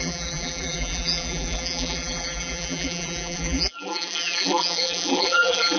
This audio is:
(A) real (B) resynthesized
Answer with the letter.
B